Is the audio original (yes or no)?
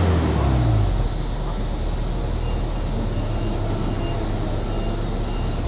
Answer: yes